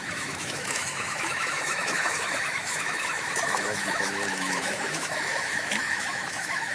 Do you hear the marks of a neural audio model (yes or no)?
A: yes